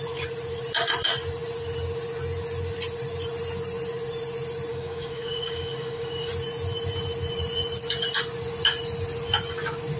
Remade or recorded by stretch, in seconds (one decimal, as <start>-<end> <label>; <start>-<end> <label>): 0.0-4.7 recorded; 4.7-6.3 remade; 6.3-10.0 recorded